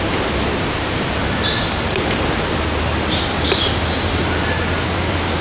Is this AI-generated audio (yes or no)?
yes